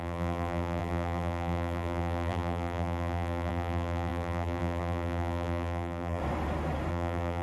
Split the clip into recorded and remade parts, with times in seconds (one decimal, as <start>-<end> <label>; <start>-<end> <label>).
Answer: 0.0-6.2 remade; 6.2-6.9 recorded; 6.9-7.4 remade